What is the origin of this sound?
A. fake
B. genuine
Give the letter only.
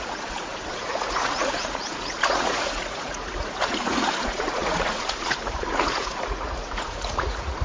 A